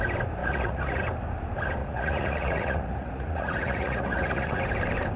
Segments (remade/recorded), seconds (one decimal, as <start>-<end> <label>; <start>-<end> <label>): 0.0-0.4 recorded; 0.4-1.0 remade; 1.0-1.8 recorded; 1.8-4.6 remade; 4.6-5.2 recorded